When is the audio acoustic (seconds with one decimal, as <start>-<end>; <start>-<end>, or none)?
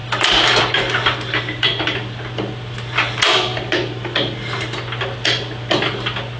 0.0-6.4